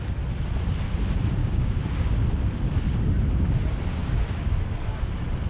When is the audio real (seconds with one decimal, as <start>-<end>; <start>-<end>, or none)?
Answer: 0.0-1.4; 2.1-4.0; 4.6-5.5